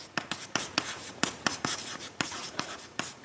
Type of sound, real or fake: fake